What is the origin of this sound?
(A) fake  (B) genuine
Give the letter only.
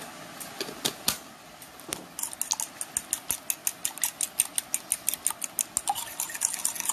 B